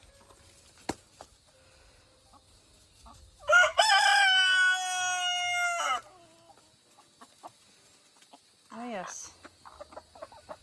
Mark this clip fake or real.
real